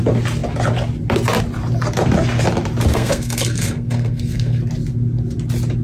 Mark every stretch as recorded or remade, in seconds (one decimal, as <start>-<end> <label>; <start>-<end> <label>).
0.0-2.9 recorded; 2.9-4.6 remade; 4.6-5.8 recorded